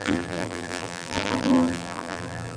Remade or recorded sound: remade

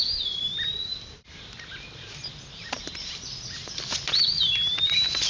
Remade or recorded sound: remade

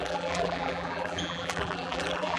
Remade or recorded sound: remade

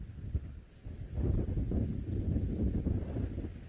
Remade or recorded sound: recorded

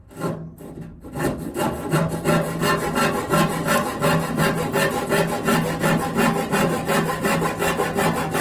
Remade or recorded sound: recorded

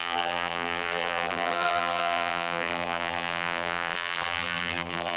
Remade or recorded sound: remade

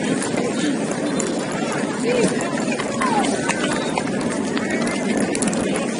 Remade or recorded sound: recorded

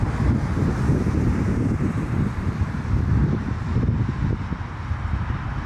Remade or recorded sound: remade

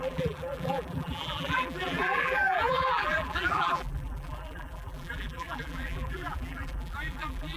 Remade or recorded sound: remade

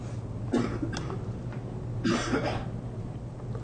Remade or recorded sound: recorded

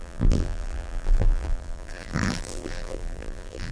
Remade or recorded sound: remade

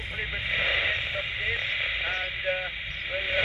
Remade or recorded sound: remade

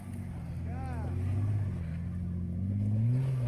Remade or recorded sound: recorded